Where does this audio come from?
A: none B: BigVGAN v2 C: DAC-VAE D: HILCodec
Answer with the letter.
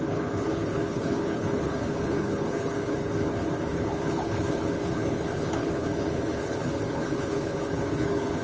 D